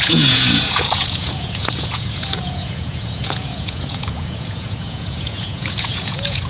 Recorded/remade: remade